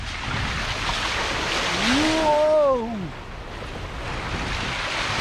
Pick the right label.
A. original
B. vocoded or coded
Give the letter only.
A